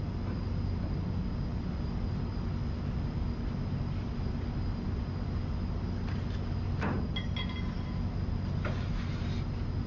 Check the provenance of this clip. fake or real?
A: real